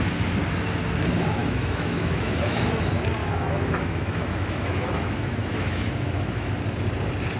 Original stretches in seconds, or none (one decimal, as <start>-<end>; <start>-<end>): 0.0-1.4; 2.8-3.2; 6.5-7.4